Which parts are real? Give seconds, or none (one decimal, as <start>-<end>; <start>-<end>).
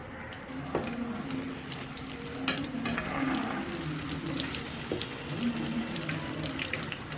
0.0-7.2